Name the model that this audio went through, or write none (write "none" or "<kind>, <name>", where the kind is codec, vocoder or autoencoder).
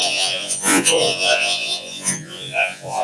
vocoder, Vocos